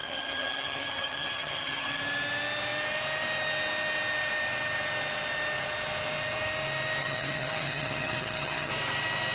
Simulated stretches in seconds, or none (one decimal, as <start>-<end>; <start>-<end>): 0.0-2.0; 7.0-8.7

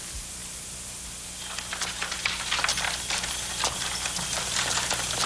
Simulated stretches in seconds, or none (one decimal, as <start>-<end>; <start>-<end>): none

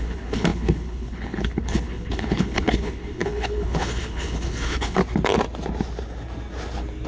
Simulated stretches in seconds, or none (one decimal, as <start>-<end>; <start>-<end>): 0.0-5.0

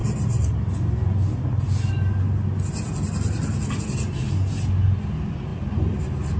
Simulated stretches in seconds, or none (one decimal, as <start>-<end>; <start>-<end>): none

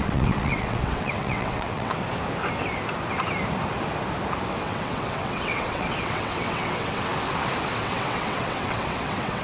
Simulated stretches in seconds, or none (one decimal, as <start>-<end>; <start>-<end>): 0.0-2.0; 4.6-7.1; 7.8-9.4